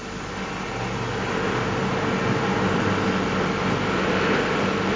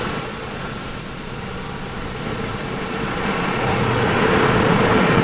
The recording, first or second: first